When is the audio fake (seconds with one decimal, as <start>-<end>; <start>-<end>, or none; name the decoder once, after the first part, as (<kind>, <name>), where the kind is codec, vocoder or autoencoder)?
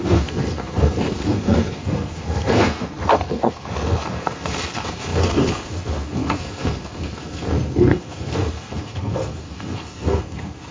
0.0-10.7 (codec, SNAC)